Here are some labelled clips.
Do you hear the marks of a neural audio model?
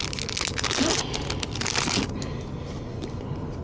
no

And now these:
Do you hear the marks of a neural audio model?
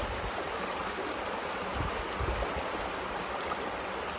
no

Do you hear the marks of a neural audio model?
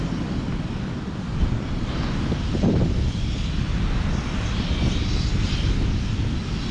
no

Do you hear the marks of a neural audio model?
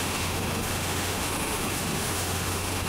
yes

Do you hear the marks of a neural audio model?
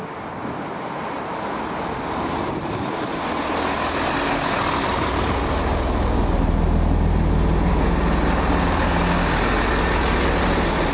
no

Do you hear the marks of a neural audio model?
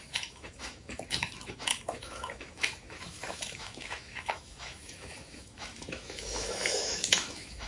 yes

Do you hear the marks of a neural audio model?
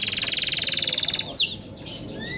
no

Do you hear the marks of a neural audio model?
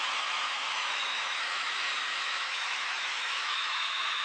yes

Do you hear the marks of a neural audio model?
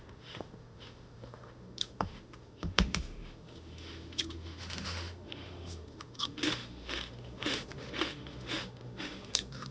yes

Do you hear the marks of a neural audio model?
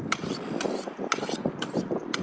no